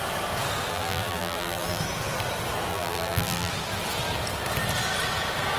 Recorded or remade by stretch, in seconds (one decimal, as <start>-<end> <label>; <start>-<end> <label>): 0.0-0.7 recorded; 0.7-1.8 remade; 1.8-2.7 recorded; 2.7-3.5 remade; 3.5-5.6 recorded